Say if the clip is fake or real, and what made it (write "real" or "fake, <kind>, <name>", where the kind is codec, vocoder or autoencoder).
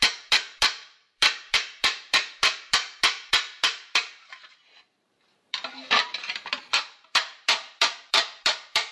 fake, vocoder, BigVGAN v2